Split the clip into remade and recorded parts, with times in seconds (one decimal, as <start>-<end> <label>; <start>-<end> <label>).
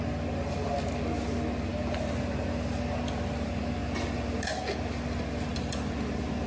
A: 0.0-6.5 recorded